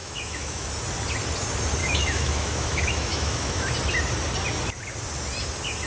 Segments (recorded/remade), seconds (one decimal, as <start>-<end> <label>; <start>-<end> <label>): 0.0-0.7 remade; 0.7-1.8 recorded; 1.8-3.7 remade; 3.7-5.9 recorded